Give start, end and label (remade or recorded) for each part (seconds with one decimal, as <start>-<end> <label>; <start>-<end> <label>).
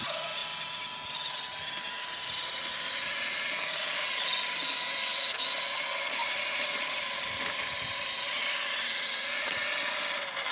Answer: 0.0-10.5 recorded